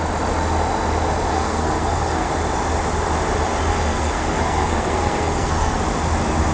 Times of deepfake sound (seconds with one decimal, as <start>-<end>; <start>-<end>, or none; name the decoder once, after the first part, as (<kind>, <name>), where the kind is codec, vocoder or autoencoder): 1.3-2.3 (codec, SNAC); 3.7-5.8

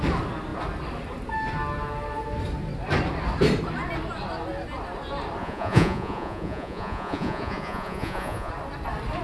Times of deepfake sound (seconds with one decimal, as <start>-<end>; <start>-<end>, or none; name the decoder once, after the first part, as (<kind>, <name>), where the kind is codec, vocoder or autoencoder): 5.4-8.5 (vocoder, Vocos)